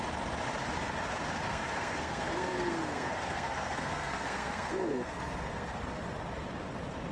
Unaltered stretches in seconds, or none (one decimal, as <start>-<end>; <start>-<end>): 0.0-1.5; 5.8-7.1